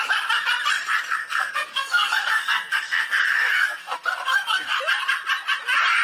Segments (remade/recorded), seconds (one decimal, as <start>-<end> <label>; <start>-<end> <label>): 0.0-1.2 recorded; 1.2-4.8 remade; 4.8-6.0 recorded